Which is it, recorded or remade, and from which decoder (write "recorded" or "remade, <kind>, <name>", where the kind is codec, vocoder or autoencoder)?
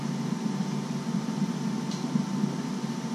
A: recorded